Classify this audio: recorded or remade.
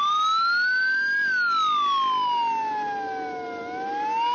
recorded